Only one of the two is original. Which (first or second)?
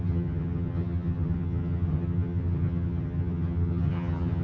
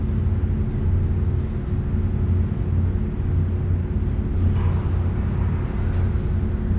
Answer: second